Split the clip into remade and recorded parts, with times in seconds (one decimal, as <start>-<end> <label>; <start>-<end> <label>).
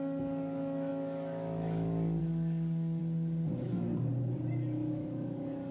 0.0-3.0 remade; 3.0-4.9 recorded; 4.9-5.7 remade